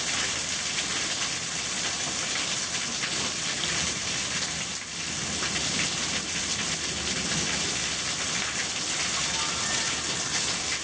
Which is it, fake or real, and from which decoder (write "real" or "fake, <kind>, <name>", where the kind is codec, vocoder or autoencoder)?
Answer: real